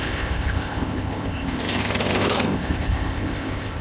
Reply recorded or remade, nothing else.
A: remade